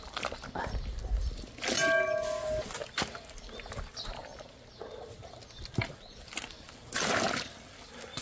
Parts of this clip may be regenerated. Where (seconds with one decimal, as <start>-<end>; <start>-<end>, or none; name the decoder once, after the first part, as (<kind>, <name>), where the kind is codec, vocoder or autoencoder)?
none